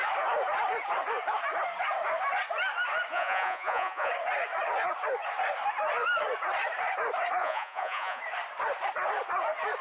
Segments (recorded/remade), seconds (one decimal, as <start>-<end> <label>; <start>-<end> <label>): 0.0-3.1 recorded; 3.1-4.1 remade; 4.1-7.4 recorded; 7.4-8.2 remade; 8.2-9.8 recorded